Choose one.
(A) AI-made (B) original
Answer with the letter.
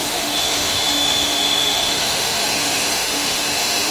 A